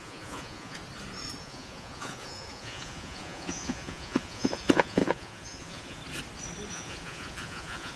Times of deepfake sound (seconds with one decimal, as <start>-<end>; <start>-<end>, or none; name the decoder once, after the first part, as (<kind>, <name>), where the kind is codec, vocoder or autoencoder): 0.0-0.8 (vocoder, Vocos); 1.4-6.0; 6.7-8.0